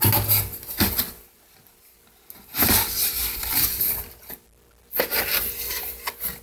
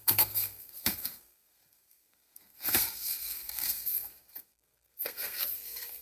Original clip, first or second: first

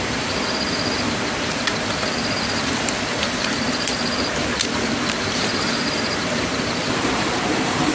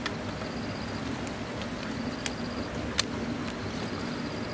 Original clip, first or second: second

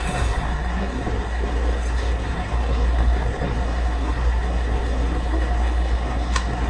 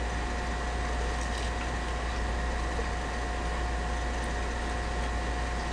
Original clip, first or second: second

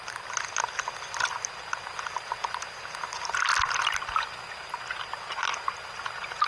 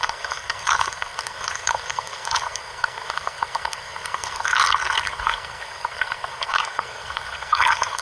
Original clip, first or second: first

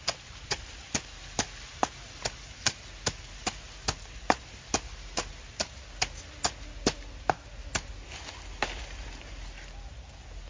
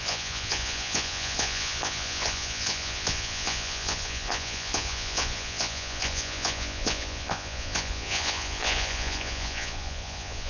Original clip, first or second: first